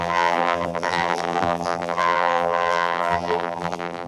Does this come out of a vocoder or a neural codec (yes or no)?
yes